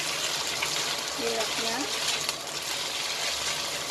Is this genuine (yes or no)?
yes